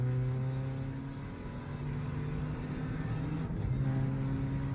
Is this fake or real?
real